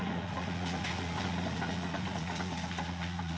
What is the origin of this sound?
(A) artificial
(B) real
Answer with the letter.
A